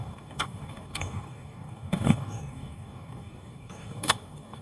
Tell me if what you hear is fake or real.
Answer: fake